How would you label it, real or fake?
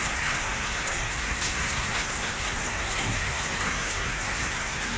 fake